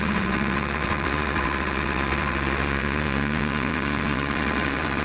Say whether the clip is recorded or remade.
remade